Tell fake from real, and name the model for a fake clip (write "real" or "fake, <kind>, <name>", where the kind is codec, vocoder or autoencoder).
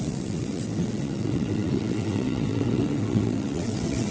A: fake, vocoder, WaveNeXt